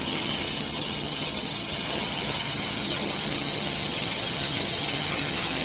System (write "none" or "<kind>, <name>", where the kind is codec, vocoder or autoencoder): vocoder, HiFi-GAN